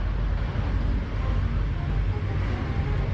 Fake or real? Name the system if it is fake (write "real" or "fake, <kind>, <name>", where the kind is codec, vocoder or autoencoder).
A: real